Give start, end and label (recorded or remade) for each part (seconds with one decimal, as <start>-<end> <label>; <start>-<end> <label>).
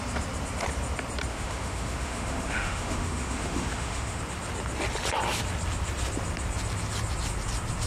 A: 0.0-1.3 recorded; 1.3-4.2 remade; 4.2-7.9 recorded